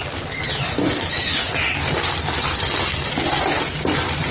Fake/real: real